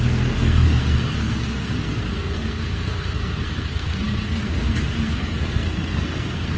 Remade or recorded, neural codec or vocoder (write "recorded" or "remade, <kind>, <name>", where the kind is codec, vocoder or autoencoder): remade, codec, SNAC